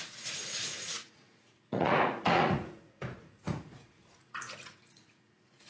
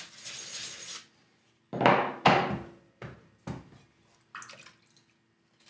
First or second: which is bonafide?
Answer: second